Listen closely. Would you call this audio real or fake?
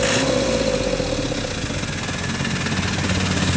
real